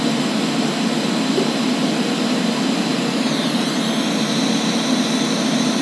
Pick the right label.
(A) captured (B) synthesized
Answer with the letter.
A